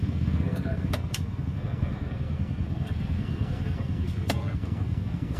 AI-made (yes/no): yes